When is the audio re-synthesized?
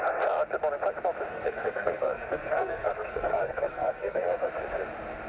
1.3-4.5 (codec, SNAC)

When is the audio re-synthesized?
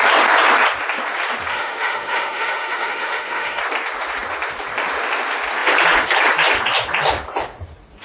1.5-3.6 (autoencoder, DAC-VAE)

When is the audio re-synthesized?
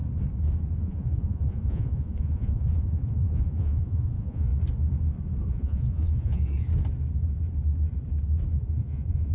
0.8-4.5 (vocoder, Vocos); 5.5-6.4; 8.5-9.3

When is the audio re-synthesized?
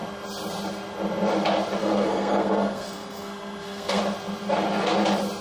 1.8-4.0 (codec, SNAC)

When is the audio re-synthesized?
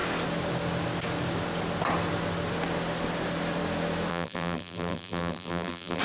4.1-6.0 (vocoder, BigVGAN v2)